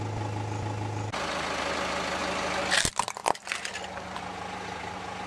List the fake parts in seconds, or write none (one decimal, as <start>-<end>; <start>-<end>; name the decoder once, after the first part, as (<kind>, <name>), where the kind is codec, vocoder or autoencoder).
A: none